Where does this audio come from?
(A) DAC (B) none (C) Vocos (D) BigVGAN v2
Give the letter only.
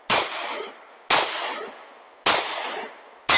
B